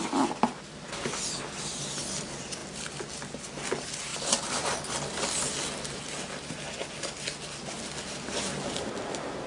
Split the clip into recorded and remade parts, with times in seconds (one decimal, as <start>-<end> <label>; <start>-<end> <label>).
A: 0.0-9.5 recorded